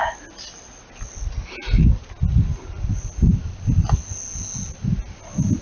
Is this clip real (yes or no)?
yes